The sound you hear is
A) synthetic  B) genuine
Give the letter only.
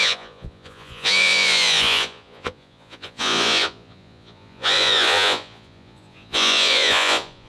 A